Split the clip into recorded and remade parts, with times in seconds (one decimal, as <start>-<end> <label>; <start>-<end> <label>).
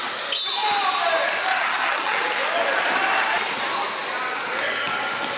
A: 0.0-1.5 recorded; 1.5-2.2 remade; 2.2-5.4 recorded